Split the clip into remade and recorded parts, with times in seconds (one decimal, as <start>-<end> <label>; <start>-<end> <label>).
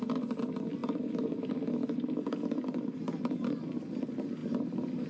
0.0-5.1 recorded